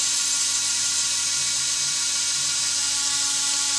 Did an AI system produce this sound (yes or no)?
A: yes